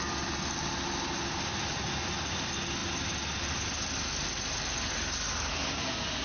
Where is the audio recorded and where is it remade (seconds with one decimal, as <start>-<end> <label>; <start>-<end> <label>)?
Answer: 0.0-6.2 recorded